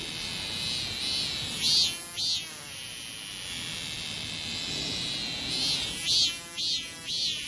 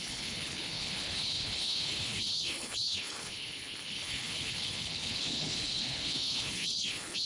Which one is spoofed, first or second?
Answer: second